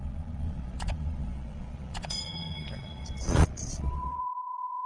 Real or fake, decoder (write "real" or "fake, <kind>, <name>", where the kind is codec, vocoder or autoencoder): fake, vocoder, Vocos